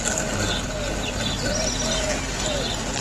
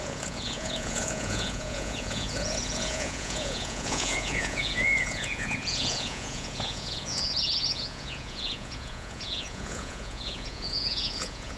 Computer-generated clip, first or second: second